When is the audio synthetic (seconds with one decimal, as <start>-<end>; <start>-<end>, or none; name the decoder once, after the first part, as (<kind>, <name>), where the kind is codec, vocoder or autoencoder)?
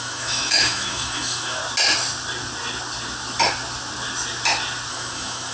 0.0-1.6 (autoencoder, DAC-VAE); 4.9-5.5